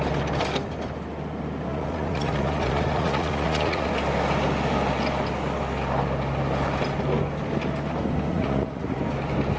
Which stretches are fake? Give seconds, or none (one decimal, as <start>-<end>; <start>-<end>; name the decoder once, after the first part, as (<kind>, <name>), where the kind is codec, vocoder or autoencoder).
1.7-3.9 (vocoder, Vocos); 8.3-9.0